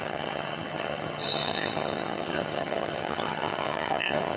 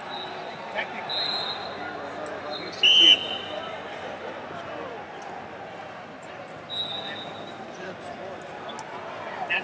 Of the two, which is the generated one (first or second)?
first